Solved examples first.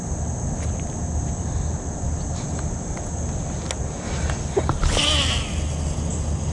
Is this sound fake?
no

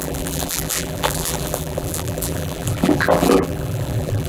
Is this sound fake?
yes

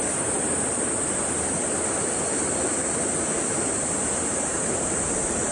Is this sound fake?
no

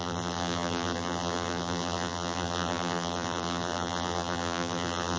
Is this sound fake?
yes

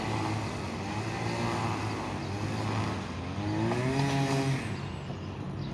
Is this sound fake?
no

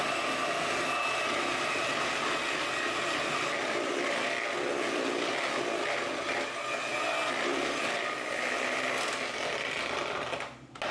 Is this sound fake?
no